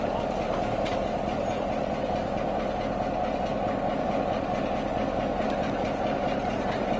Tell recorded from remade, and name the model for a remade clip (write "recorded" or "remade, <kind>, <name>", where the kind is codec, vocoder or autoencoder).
recorded